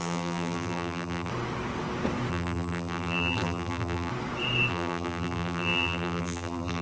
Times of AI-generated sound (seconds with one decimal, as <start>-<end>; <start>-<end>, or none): 0.0-1.3; 2.3-4.1; 4.7-6.8